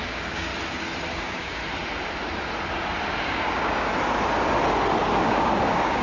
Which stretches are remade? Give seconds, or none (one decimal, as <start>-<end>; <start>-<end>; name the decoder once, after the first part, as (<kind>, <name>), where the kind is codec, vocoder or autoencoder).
0.0-0.5 (codec, DAC); 1.1-1.6; 3.2-3.9; 5.2-6.0